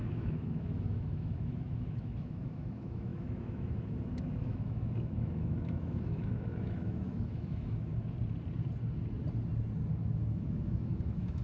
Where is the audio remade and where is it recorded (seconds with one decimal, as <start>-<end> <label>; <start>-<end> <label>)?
0.0-7.9 remade; 7.9-9.9 recorded; 9.9-11.4 remade